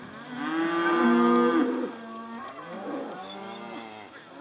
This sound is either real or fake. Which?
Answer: real